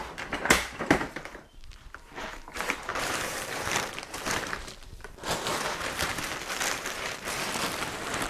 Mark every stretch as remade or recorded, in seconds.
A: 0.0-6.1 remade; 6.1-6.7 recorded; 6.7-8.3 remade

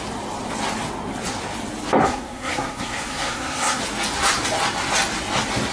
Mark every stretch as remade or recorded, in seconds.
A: 0.0-2.0 recorded; 2.0-3.8 remade; 3.8-5.7 recorded

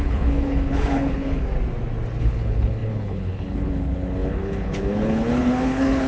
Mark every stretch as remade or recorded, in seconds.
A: 0.0-1.4 remade; 1.4-2.2 recorded; 2.2-6.1 remade

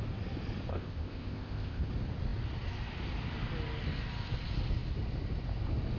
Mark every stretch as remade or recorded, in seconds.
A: 0.0-0.7 recorded; 0.7-1.9 remade; 1.9-6.0 recorded

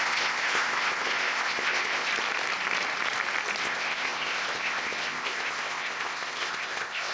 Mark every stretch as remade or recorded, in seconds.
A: 0.0-2.1 remade; 2.1-3.6 recorded; 3.6-7.1 remade

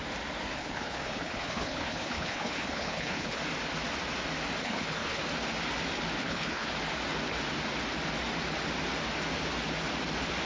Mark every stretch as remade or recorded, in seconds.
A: 0.0-0.5 recorded; 0.5-3.4 remade; 3.4-4.6 recorded; 4.6-5.2 remade; 5.2-6.2 recorded; 6.2-6.7 remade; 6.7-10.4 recorded